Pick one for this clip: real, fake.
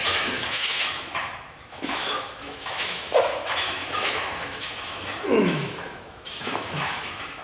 fake